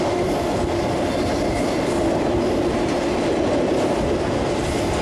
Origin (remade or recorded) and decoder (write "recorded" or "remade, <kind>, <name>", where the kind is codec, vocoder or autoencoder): recorded